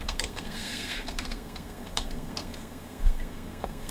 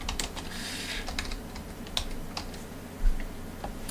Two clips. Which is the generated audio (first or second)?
first